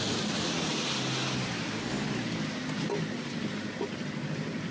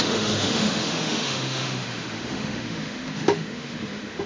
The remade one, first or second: second